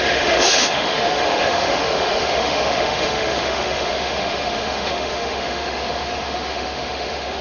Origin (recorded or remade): remade